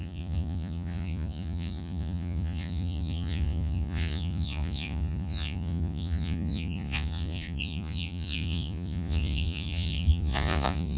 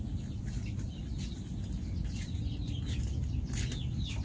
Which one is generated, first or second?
first